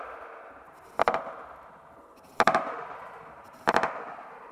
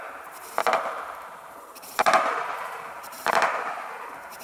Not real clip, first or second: second